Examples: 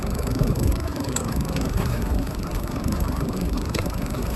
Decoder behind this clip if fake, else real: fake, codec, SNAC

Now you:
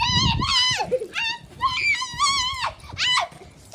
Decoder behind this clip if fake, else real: real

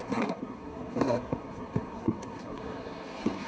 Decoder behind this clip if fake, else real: fake, codec, SNAC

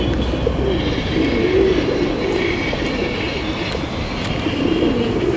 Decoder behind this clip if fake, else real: real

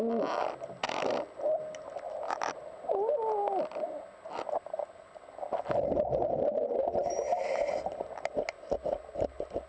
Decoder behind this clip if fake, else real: real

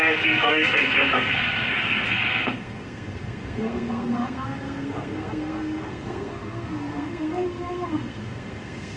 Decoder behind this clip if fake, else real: fake, codec, SNAC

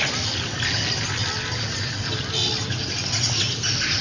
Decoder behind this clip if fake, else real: real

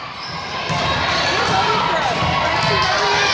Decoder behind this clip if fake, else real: real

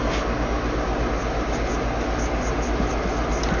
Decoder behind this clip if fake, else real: real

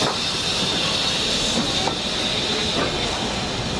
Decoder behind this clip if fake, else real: real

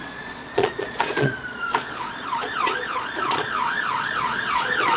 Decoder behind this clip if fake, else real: fake, vocoder, Vocos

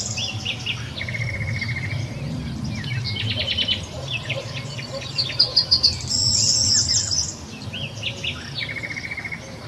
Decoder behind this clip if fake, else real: real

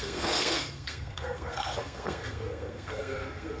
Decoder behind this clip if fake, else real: fake, codec, SNAC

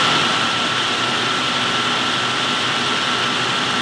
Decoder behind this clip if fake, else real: real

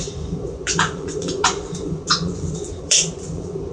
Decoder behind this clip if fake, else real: fake, vocoder, Vocos